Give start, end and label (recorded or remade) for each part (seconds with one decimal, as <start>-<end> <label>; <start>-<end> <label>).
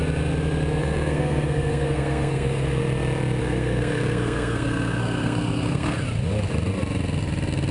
0.0-0.8 recorded; 0.8-2.8 remade; 2.8-3.4 recorded; 3.4-6.0 remade; 6.0-7.7 recorded